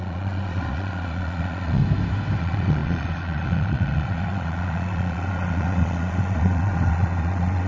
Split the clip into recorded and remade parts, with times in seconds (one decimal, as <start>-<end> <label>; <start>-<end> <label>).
0.0-1.8 remade; 1.8-2.4 recorded; 2.4-7.7 remade